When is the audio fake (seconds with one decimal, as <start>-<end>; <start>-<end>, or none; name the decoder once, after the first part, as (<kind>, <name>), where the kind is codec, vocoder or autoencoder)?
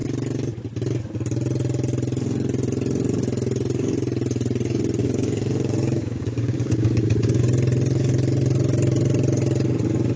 5.0-7.4 (codec, DAC)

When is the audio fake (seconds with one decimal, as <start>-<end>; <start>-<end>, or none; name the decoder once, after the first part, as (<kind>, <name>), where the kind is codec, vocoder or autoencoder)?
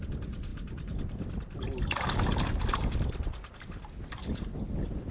none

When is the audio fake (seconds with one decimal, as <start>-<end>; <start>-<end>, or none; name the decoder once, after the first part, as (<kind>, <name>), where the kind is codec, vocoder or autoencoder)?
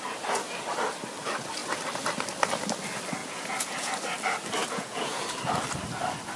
3.2-3.9 (vocoder, Vocos); 4.6-5.2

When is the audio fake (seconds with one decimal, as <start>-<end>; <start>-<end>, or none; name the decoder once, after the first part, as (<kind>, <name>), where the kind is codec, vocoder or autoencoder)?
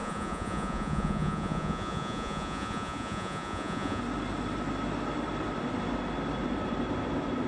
0.0-4.0 (vocoder, Vocos)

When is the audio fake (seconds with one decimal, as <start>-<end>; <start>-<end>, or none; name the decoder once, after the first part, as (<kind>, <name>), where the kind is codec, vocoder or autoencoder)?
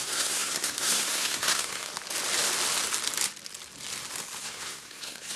0.0-1.9 (codec, SNAC); 4.4-5.4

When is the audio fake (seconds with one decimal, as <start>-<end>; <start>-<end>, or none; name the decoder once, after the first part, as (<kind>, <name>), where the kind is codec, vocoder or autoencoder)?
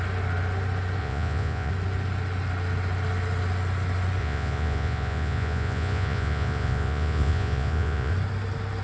1.0-1.7 (vocoder, Vocos); 4.2-8.1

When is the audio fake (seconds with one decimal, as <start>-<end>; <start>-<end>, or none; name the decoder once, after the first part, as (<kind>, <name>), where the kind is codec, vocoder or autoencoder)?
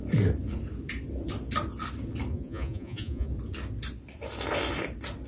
2.3-3.3 (vocoder, Vocos)